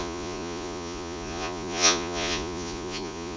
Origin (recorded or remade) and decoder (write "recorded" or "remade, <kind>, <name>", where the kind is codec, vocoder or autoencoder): remade, vocoder, Vocos